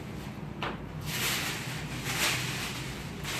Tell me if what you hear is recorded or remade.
recorded